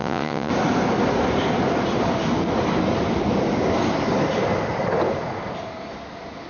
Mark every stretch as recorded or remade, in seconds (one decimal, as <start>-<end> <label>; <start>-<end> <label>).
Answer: 0.0-0.5 remade; 0.5-6.5 recorded